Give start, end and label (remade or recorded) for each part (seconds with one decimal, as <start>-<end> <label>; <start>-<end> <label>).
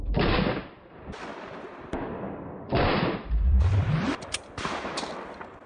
0.0-1.7 recorded; 1.7-5.1 remade; 5.1-5.7 recorded